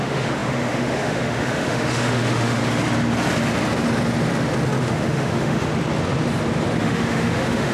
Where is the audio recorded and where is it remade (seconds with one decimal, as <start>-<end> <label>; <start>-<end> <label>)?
0.0-2.6 remade; 2.6-4.8 recorded; 4.8-5.7 remade; 5.7-6.8 recorded; 6.8-7.7 remade